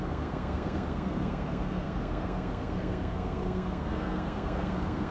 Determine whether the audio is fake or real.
fake